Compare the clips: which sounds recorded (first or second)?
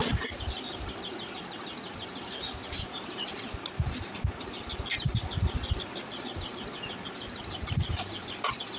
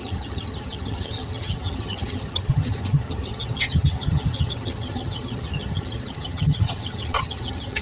first